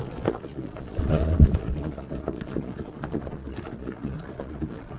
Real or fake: fake